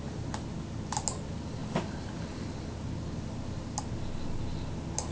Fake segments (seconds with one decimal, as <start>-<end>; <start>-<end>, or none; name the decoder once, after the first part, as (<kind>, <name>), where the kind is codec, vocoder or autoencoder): none

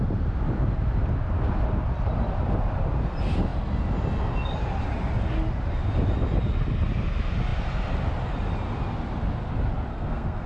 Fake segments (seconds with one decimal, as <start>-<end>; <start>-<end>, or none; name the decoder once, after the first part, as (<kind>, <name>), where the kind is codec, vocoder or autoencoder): 9.9-10.5 (codec, SNAC)

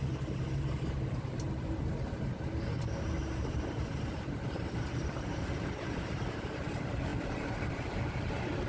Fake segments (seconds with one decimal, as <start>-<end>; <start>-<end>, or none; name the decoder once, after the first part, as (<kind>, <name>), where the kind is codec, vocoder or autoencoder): 0.0-8.7 (vocoder, BigVGAN v2)

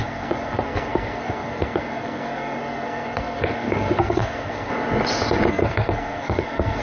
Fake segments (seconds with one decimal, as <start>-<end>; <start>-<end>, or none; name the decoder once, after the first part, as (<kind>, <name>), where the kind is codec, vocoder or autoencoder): 0.0-4.7 (codec, SNAC); 5.5-6.8

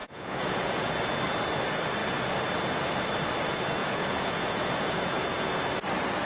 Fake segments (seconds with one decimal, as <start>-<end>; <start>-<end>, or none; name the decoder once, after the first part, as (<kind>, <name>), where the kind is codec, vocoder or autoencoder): 0.0-0.9 (vocoder, Vocos); 3.8-5.6

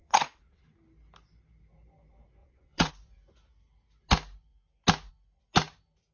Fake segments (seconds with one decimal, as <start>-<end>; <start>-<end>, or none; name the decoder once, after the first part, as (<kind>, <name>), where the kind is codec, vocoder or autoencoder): 0.0-0.6 (vocoder, WaveNeXt); 2.4-2.9

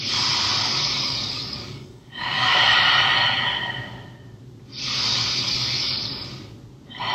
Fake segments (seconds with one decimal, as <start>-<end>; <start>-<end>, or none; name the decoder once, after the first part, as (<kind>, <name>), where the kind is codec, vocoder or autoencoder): 0.7-2.6 (codec, DAC); 5.1-6.2

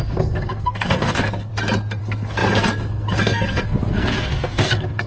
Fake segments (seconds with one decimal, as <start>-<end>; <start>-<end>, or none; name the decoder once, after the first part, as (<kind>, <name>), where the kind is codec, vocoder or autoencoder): 0.0-1.5 (codec, SNAC); 2.0-5.1